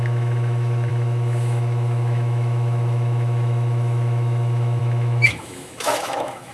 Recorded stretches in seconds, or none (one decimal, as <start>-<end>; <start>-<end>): none